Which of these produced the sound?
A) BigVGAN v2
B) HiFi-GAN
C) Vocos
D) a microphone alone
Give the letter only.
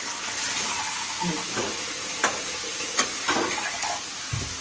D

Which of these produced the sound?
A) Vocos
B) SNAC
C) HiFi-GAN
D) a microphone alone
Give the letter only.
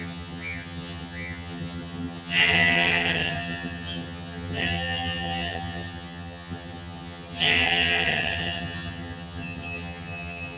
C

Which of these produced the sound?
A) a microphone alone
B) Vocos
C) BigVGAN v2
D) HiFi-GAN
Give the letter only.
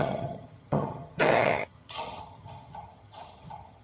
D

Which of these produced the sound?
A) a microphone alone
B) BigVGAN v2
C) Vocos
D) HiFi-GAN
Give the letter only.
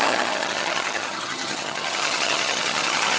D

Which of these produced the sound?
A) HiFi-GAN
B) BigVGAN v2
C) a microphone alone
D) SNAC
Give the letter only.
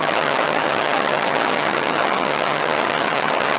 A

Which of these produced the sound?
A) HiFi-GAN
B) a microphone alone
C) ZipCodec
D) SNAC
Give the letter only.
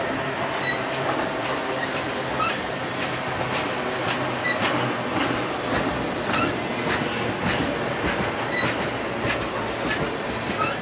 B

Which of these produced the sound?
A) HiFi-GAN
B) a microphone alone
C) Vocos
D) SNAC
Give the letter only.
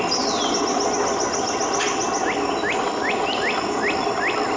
B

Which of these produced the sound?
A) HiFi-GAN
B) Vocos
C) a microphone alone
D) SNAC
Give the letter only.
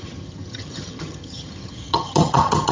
A